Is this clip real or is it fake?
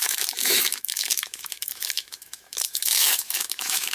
fake